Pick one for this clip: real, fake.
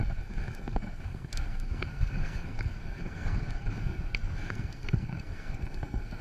fake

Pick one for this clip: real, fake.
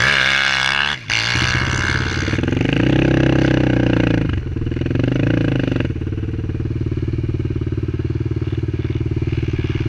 real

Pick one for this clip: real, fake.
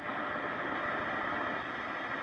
real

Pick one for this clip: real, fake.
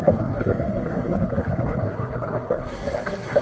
fake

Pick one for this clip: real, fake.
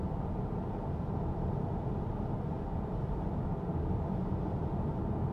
real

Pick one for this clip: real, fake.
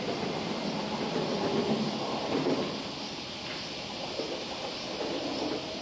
real